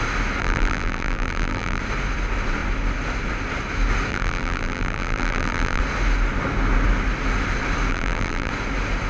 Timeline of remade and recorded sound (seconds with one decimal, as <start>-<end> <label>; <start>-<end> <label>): 0.0-0.4 recorded; 0.4-1.8 remade; 1.8-4.1 recorded; 4.1-5.8 remade; 5.8-7.9 recorded; 7.9-8.5 remade; 8.5-9.1 recorded